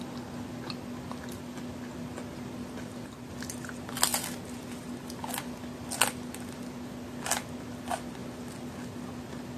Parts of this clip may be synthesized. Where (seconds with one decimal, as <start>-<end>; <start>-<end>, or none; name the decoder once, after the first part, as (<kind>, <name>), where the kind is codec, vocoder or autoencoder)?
none